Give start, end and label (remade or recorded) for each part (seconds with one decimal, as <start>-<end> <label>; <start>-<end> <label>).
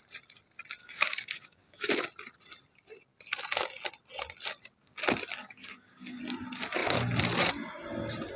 0.0-0.8 recorded; 0.8-1.9 remade; 1.9-5.4 recorded; 5.4-6.2 remade; 6.2-8.4 recorded